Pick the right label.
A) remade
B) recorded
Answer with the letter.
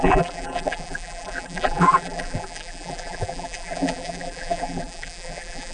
A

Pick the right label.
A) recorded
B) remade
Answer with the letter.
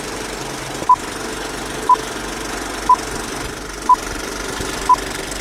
A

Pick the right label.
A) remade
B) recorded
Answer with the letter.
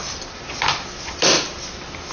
B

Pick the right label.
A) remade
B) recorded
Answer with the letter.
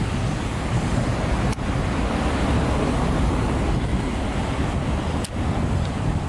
B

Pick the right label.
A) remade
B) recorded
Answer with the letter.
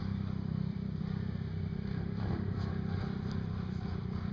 A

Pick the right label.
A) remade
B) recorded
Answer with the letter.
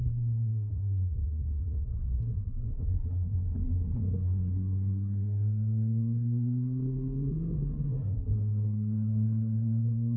A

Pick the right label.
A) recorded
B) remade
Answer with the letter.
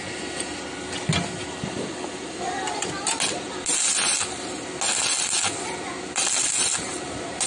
A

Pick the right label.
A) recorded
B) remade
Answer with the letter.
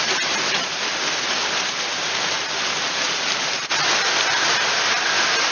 A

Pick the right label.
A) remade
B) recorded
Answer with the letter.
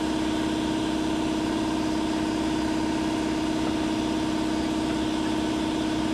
B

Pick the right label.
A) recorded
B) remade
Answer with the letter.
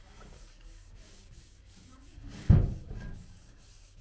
B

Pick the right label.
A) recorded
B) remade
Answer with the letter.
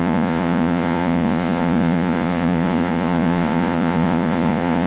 B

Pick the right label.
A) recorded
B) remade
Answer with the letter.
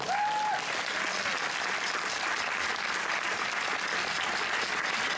A